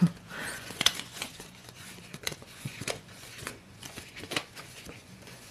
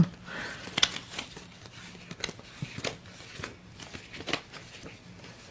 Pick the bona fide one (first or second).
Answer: second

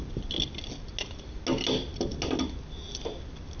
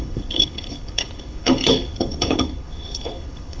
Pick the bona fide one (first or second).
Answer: first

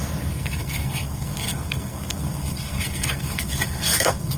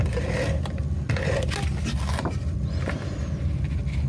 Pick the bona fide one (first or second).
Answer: second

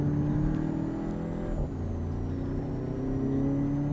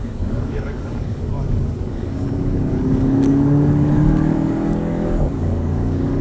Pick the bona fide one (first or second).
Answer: first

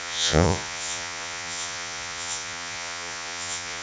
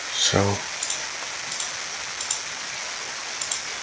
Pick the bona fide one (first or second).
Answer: second